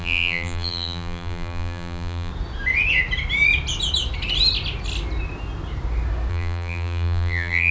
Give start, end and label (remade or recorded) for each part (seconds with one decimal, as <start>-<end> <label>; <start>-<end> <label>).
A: 0.0-2.3 remade; 2.3-6.3 recorded; 6.3-7.7 remade